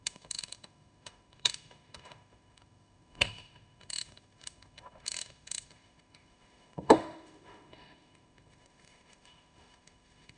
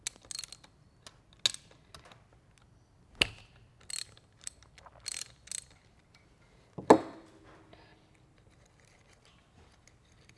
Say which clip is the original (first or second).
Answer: second